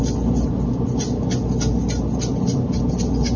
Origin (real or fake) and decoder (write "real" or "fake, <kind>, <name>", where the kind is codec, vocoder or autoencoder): real